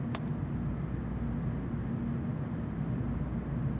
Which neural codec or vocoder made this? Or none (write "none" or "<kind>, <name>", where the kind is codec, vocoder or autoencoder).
none